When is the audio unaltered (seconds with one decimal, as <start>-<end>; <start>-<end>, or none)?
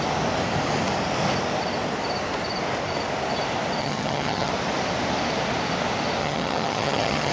0.0-3.8; 4.5-6.2